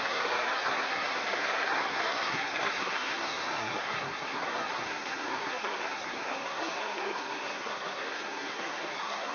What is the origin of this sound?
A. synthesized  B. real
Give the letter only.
A